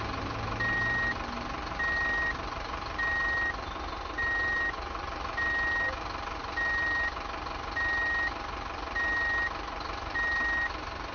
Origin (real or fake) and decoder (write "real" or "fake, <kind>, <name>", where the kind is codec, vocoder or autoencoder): real